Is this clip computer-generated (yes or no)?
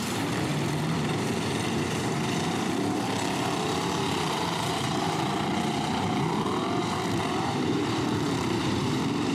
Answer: yes